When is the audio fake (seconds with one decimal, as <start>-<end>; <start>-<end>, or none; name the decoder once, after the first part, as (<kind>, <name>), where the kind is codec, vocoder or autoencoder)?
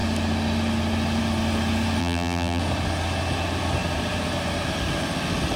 2.0-2.6 (vocoder, BigVGAN v2)